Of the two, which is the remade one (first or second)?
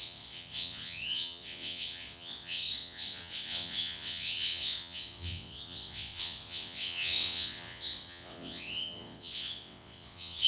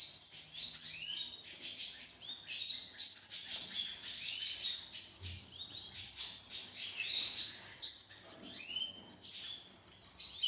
first